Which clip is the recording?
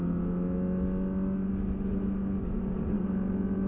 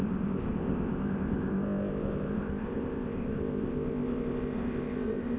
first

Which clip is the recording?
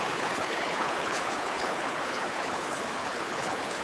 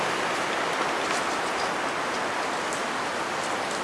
second